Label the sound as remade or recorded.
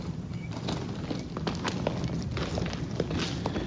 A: recorded